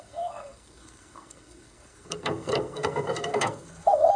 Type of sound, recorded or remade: remade